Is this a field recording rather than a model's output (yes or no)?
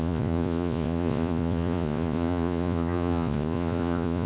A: no